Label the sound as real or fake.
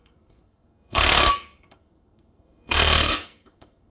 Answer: fake